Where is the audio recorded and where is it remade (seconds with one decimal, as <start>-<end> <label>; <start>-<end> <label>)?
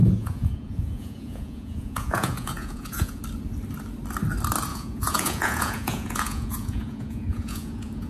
0.0-3.2 remade; 3.2-4.7 recorded; 4.7-8.1 remade